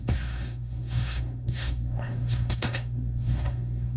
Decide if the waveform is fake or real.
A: fake